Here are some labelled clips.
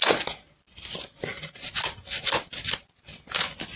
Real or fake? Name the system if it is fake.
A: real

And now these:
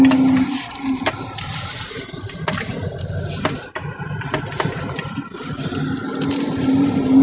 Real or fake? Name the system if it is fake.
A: real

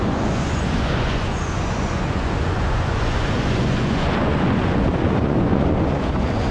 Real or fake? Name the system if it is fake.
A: fake, vocoder, Vocos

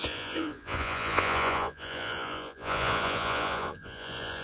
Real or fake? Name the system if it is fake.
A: fake, vocoder, Vocos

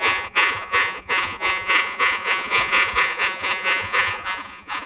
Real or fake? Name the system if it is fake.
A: fake, vocoder, Vocos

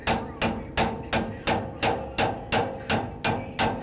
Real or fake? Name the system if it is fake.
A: real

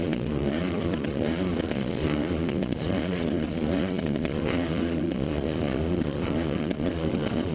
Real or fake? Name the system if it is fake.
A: fake, vocoder, Vocos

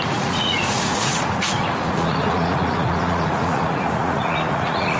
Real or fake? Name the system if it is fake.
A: fake, vocoder, Vocos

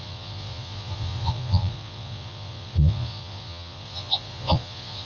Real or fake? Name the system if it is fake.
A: fake, vocoder, Vocos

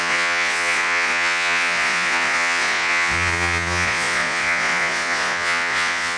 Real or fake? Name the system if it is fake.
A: fake, vocoder, Vocos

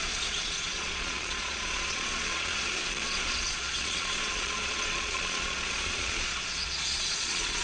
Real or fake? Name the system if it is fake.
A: fake, vocoder, Vocos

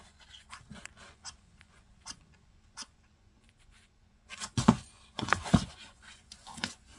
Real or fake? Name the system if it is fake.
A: fake, vocoder, Vocos